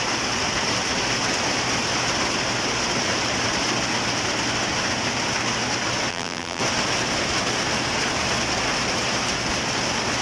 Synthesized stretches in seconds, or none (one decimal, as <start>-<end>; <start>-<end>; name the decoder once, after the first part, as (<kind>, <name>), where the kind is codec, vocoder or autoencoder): 6.1-6.6 (vocoder, BigVGAN v2)